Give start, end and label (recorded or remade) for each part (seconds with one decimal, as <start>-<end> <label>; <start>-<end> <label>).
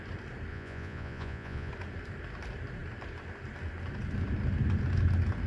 0.0-0.5 recorded; 0.5-1.7 remade; 1.7-5.5 recorded